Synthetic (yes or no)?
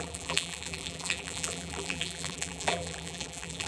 yes